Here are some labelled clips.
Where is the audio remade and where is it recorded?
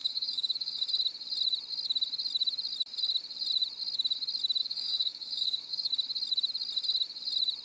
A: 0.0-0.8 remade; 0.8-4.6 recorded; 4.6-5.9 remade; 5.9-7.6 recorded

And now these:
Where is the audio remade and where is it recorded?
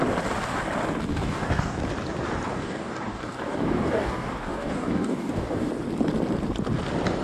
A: 0.0-1.1 recorded; 1.1-1.8 remade; 1.8-2.5 recorded; 2.5-5.7 remade; 5.7-7.2 recorded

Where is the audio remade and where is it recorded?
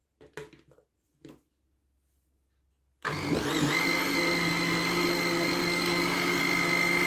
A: 0.0-5.6 recorded; 5.6-6.4 remade; 6.4-7.1 recorded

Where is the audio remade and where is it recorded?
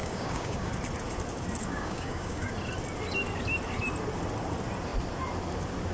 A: 0.0-0.7 remade; 0.7-1.7 recorded; 1.7-2.5 remade; 2.5-5.9 recorded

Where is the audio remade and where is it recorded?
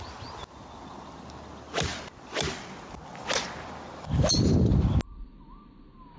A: 0.0-6.2 recorded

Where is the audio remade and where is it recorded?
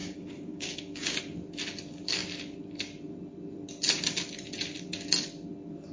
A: 0.0-1.2 remade; 1.2-5.9 recorded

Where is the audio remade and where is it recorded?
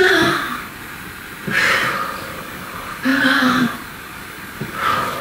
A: 0.0-0.8 remade; 0.8-1.9 recorded; 1.9-5.2 remade